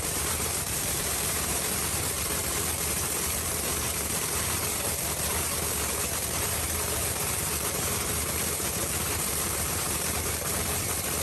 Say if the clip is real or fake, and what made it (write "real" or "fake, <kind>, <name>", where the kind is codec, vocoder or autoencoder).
fake, vocoder, BigVGAN v2